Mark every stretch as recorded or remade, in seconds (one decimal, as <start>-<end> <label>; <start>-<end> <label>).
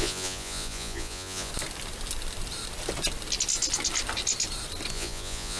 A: 0.0-1.5 remade; 1.5-4.9 recorded; 4.9-5.6 remade